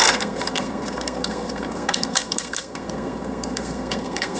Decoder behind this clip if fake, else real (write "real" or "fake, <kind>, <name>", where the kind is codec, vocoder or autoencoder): fake, codec, SNAC